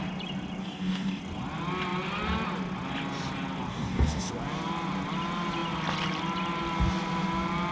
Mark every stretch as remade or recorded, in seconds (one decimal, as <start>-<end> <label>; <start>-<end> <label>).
0.0-0.6 recorded; 0.6-1.2 remade; 1.2-3.7 recorded; 3.7-4.3 remade; 4.3-7.7 recorded

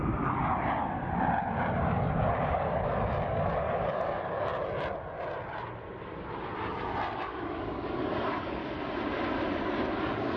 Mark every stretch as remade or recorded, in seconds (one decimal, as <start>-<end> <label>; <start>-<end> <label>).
0.0-0.4 remade; 0.4-2.4 recorded; 2.4-4.5 remade; 4.5-7.2 recorded; 7.2-8.6 remade; 8.6-9.6 recorded; 9.6-10.4 remade

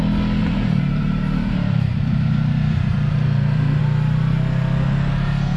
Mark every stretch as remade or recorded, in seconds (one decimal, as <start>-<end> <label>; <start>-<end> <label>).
0.0-0.4 recorded; 0.4-3.8 remade; 3.8-5.6 recorded

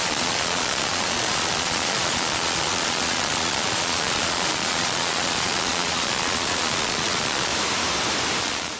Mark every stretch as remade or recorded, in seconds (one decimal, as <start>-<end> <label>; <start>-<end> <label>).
0.0-7.5 remade; 7.5-8.4 recorded; 8.4-8.8 remade